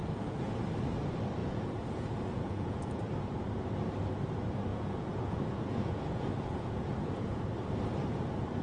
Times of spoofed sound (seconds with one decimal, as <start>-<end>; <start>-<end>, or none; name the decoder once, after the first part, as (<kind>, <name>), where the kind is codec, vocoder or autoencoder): 0.0-0.5 (vocoder, Vocos); 1.4-3.1; 4.7-7.4